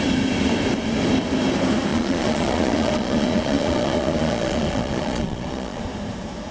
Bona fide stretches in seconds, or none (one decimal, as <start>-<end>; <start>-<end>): 0.0-1.9; 5.8-6.5